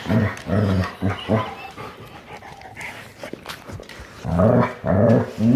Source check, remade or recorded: recorded